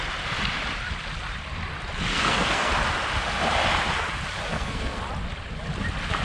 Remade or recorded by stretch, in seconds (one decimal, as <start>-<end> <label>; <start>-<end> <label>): 0.0-2.1 recorded; 2.1-2.7 remade; 2.7-4.5 recorded; 4.5-5.0 remade; 5.0-6.2 recorded